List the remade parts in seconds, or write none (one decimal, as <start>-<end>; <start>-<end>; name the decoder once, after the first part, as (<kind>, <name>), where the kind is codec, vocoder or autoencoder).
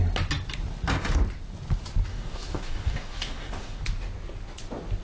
2.1-3.8 (codec, DAC)